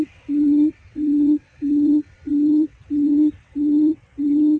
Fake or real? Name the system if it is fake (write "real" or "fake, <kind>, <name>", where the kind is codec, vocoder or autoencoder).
fake, vocoder, WaveNeXt